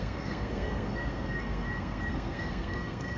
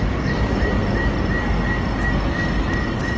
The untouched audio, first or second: second